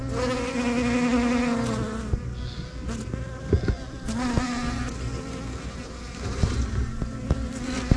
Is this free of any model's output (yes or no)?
yes